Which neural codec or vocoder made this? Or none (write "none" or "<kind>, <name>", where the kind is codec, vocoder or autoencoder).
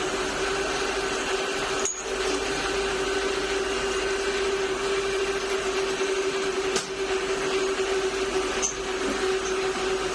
none